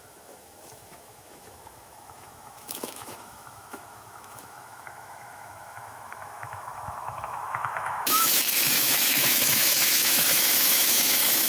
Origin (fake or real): fake